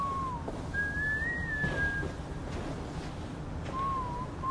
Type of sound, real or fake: real